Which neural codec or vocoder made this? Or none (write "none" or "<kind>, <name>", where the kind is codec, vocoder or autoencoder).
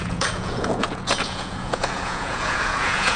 vocoder, Vocos